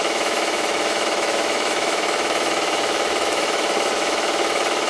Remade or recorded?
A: remade